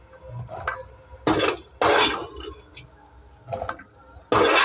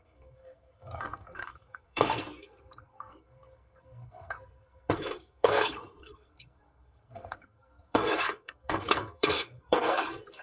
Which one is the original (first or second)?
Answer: first